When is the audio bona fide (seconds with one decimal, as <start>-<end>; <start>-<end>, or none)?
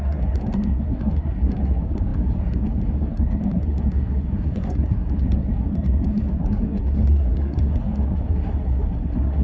none